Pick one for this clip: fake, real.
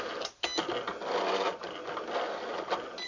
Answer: real